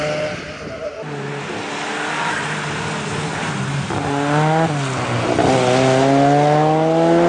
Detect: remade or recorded recorded